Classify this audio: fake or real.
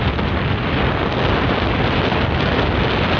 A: real